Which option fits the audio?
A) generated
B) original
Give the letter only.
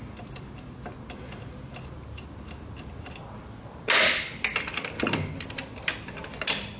B